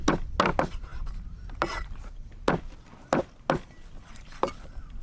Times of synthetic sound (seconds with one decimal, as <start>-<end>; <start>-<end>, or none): none